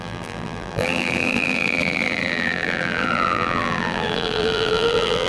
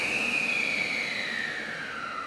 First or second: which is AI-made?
first